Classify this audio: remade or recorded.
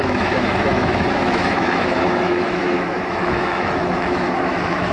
remade